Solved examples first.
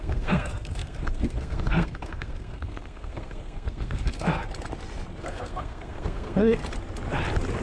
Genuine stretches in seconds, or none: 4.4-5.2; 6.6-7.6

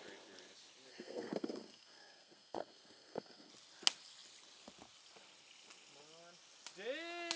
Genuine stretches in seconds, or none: 0.0-0.9; 3.5-7.4

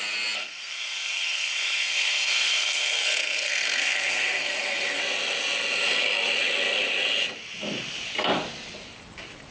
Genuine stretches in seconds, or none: 0.0-0.4; 5.0-9.5